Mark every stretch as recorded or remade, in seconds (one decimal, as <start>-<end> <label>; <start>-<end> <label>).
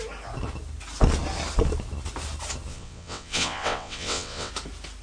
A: 0.0-2.7 recorded; 2.7-4.5 remade; 4.5-5.0 recorded